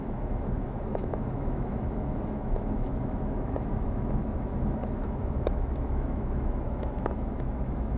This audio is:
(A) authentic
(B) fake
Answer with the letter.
B